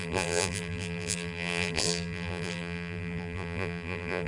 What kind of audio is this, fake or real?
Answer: fake